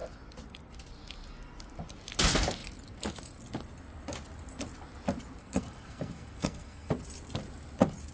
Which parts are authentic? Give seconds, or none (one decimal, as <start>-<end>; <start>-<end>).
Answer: 0.0-5.4; 6.9-8.1